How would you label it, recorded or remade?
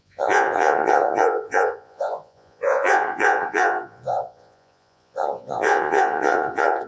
remade